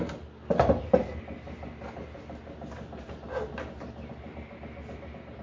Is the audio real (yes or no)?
yes